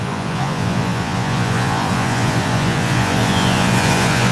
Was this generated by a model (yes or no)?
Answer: yes